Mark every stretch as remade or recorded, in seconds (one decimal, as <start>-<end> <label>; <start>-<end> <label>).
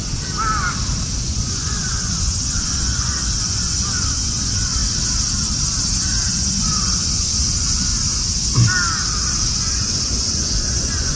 0.0-1.2 recorded; 1.2-4.8 remade; 4.8-6.3 recorded; 6.3-7.9 remade; 7.9-9.5 recorded; 9.5-11.2 remade